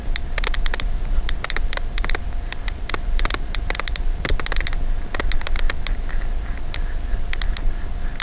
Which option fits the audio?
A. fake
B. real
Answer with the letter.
B